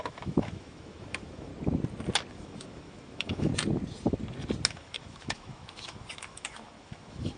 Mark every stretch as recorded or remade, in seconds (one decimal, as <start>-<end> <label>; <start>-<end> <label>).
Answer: 0.0-1.5 remade; 1.5-2.3 recorded; 2.3-3.5 remade; 3.5-4.7 recorded; 4.7-7.4 remade